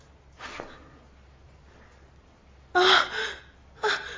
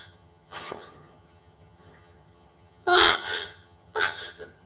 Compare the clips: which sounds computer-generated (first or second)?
second